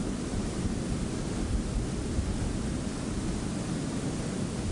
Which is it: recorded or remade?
recorded